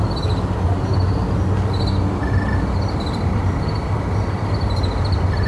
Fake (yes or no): no